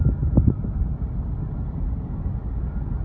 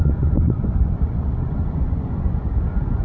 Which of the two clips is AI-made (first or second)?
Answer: second